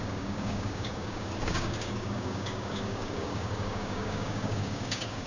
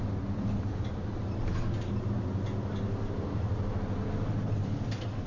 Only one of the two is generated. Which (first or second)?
first